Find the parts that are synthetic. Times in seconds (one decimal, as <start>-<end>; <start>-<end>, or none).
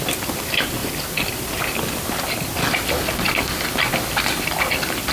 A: none